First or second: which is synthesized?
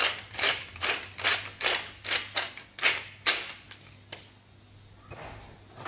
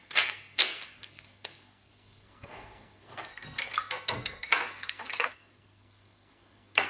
second